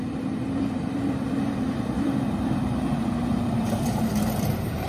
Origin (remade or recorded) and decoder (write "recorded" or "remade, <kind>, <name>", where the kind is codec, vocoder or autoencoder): remade, vocoder, BigVGAN v2